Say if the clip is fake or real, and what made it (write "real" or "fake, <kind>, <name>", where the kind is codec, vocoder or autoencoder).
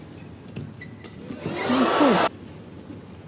real